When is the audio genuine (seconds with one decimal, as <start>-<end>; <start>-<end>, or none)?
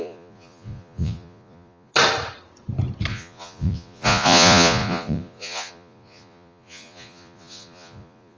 1.9-3.1